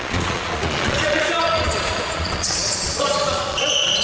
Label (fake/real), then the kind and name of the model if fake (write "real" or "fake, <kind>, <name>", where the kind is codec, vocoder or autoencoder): fake, vocoder, Vocos